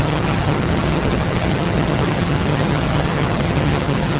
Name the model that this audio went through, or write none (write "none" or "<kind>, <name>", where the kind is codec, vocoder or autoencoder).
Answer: vocoder, HiFi-GAN